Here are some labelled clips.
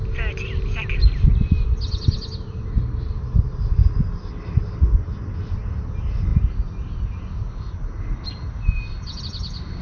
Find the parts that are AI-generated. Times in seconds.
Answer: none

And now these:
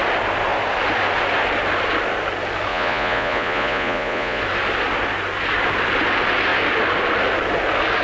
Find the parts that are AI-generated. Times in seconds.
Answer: 2.7-4.4 (vocoder, Vocos)

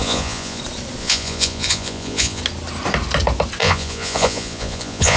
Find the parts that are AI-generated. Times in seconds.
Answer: 0.0-0.6 (vocoder, Vocos); 1.0-2.4; 3.6-5.2

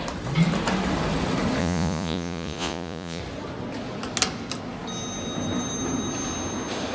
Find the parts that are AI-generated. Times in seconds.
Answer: 1.6-3.2 (vocoder, Vocos)

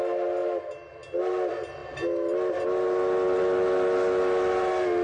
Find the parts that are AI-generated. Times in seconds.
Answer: none

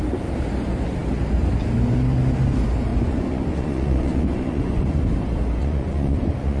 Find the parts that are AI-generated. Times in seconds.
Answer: 2.9-5.0 (vocoder, Vocos); 5.6-6.6